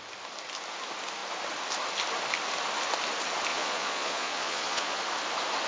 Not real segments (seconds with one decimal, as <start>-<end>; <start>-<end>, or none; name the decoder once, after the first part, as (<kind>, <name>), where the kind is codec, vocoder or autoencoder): 3.5-5.0 (vocoder, Vocos)